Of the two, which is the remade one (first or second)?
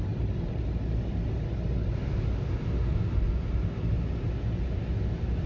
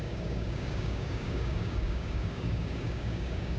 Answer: second